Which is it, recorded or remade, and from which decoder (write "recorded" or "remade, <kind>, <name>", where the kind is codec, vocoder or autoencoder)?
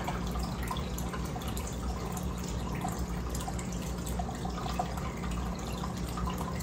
recorded